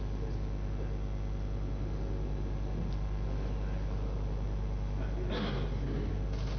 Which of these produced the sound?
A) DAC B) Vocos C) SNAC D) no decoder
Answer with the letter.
D